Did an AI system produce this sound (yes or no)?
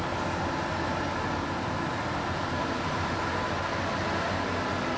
no